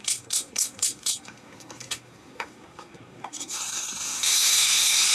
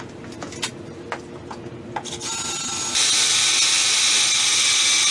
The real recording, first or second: second